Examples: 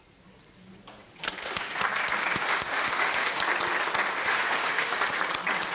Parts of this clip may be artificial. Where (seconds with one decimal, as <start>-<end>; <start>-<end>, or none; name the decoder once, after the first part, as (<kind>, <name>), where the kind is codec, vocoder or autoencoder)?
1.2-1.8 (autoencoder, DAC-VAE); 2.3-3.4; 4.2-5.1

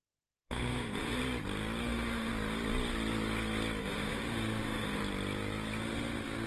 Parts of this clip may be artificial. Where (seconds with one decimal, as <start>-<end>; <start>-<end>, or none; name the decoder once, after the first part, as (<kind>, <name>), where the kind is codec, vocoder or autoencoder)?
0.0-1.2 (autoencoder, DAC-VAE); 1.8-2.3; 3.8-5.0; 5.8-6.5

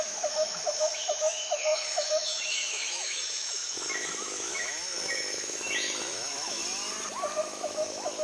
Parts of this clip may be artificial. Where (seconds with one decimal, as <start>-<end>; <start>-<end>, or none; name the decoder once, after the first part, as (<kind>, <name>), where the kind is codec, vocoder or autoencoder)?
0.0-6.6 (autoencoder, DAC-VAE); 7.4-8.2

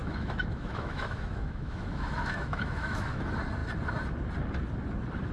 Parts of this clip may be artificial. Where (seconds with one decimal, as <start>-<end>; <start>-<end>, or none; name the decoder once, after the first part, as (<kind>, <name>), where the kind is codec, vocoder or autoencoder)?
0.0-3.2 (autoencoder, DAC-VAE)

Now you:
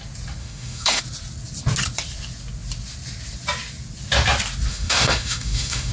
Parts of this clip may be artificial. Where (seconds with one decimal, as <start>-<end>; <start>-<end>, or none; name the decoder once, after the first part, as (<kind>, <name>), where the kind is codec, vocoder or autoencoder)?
0.4-1.0 (autoencoder, DAC-VAE); 4.7-5.9